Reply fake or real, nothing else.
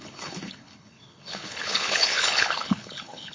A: fake